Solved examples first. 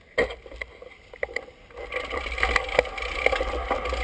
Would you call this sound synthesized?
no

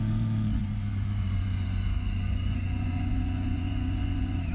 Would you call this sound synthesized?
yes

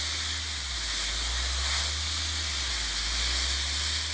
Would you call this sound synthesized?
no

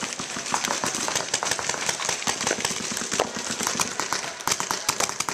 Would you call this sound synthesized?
no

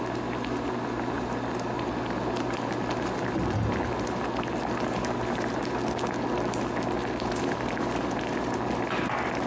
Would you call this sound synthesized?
no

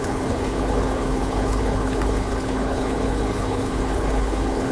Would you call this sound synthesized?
yes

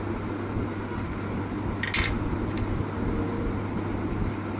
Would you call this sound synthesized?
no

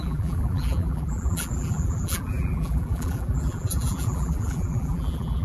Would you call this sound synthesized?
yes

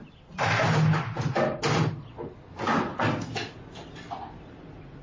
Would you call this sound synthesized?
no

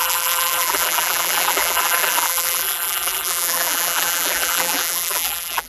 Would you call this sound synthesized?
yes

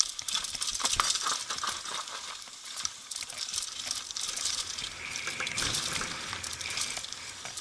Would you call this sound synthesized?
no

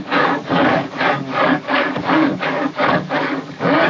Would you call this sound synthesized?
yes